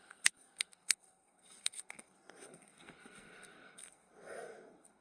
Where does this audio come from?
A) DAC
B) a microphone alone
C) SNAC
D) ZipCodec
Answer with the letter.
C